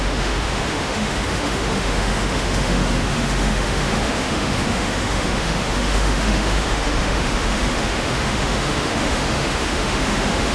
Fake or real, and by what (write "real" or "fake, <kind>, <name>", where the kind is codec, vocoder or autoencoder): fake, autoencoder, DAC-VAE